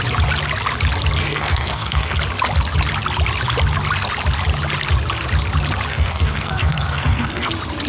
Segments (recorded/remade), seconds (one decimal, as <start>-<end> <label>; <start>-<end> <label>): 0.0-1.2 recorded; 1.2-2.2 remade; 2.2-5.9 recorded; 5.9-7.5 remade; 7.5-7.9 recorded